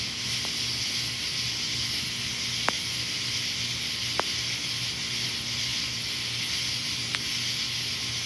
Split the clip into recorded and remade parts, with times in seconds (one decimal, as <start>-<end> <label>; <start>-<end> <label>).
0.0-8.3 recorded